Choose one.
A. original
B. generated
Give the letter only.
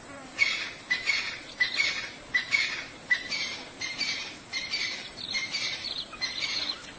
B